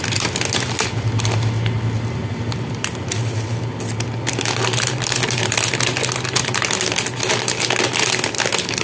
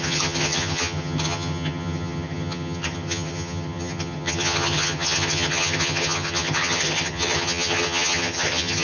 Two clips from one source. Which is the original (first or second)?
first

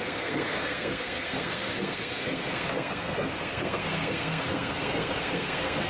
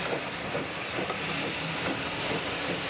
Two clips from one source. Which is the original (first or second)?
second